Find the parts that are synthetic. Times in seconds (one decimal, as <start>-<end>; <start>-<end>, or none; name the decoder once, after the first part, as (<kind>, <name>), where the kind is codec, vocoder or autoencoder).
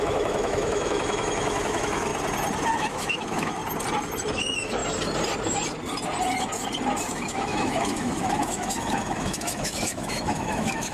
0.0-2.1 (autoencoder, DAC-VAE); 2.8-3.6; 4.3-4.8; 7.0-10.9